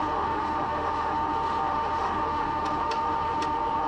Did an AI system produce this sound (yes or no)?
yes